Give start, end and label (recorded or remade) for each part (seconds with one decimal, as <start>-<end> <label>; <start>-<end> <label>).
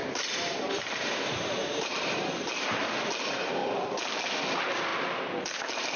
0.0-3.1 remade; 3.1-3.6 recorded; 3.6-4.2 remade; 4.2-6.0 recorded